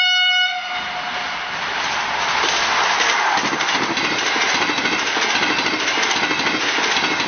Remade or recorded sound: recorded